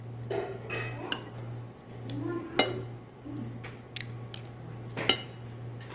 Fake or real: real